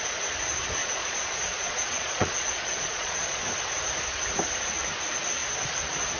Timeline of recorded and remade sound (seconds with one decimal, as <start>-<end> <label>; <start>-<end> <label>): 0.0-0.8 recorded; 0.8-3.4 remade; 3.4-6.2 recorded